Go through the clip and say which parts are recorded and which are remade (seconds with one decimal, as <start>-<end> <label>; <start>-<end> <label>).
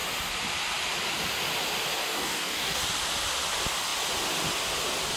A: 0.0-2.0 recorded; 2.0-2.8 remade; 2.8-5.2 recorded